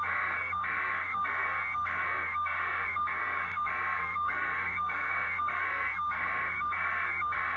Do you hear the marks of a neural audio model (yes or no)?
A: yes